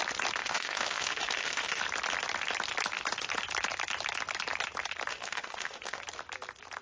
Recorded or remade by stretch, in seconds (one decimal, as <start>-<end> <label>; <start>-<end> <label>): 0.0-0.4 recorded; 0.4-1.8 remade; 1.8-5.1 recorded; 5.1-6.0 remade; 6.0-6.8 recorded